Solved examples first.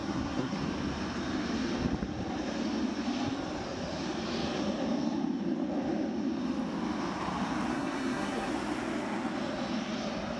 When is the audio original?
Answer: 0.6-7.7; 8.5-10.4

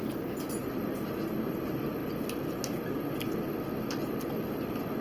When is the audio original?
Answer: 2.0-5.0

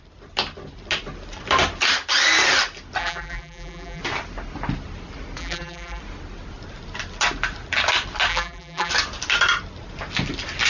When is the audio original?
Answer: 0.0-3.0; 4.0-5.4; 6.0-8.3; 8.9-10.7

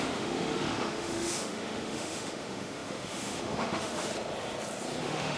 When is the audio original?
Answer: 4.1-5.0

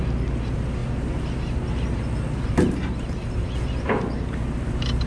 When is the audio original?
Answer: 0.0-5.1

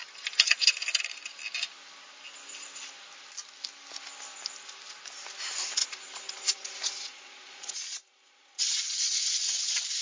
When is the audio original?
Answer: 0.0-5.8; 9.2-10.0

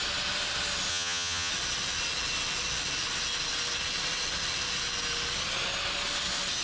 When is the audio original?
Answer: 0.0-0.9; 1.5-6.6